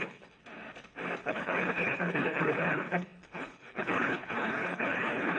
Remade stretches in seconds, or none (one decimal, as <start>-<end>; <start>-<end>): 0.0-0.4; 1.2-5.4